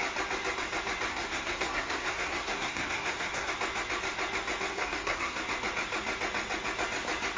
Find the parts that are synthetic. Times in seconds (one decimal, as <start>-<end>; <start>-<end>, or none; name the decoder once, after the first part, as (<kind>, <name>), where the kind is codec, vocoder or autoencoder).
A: 1.1-3.5 (codec, SNAC); 4.7-5.4